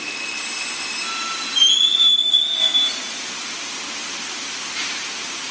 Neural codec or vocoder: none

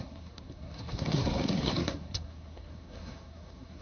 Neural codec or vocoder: codec, SNAC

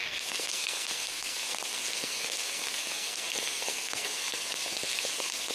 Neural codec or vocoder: codec, SNAC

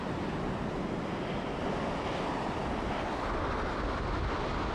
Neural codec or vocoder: none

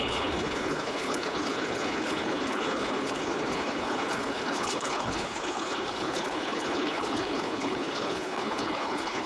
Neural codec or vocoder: codec, HILCodec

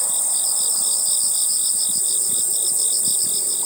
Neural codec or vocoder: none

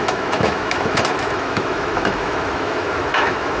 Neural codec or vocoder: autoencoder, DAC-VAE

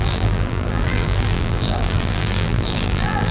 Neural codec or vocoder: vocoder, BigVGAN v2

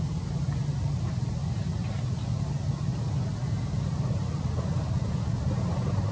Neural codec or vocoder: none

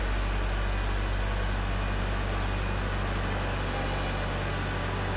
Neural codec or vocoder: none